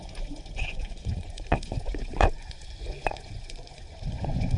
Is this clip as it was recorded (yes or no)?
no